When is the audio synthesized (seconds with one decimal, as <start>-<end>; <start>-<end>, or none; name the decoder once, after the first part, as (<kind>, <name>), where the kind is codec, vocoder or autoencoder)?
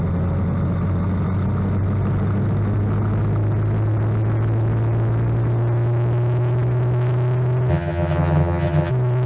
7.7-8.9 (vocoder, HiFi-GAN)